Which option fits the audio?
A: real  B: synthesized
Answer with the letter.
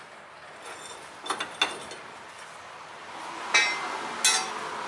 A